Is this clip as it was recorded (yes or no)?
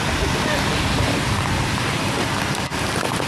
yes